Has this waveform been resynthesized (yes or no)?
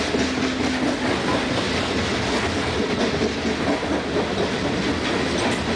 no